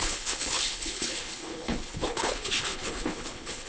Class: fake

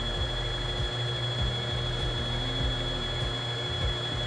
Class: real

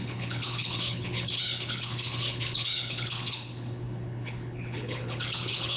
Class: fake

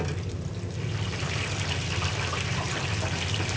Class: real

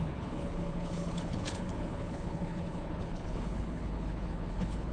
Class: fake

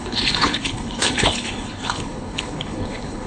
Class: fake